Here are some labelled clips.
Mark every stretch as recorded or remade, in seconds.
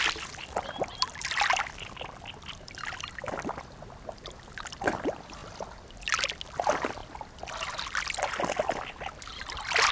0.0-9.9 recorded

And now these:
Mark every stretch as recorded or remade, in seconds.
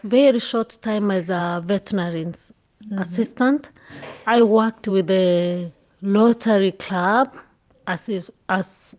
0.0-4.4 recorded; 4.4-4.9 remade; 4.9-9.0 recorded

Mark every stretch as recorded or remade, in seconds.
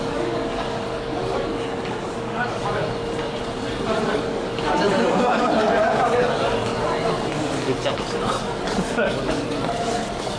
0.0-2.6 remade; 2.6-4.0 recorded; 4.0-6.7 remade; 6.7-7.3 recorded; 7.3-10.4 remade